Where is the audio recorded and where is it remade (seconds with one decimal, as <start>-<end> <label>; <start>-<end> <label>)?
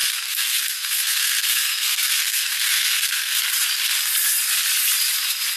0.0-3.4 remade; 3.4-5.6 recorded